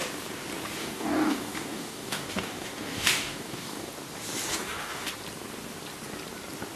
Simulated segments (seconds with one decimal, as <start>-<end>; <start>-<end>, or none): 0.8-3.9; 4.5-5.1